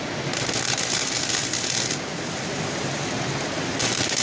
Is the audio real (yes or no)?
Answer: yes